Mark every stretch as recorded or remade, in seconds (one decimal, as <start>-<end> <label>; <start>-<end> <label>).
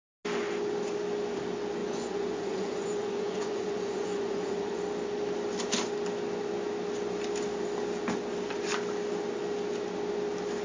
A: 0.0-1.8 recorded; 1.8-4.8 remade; 4.8-10.6 recorded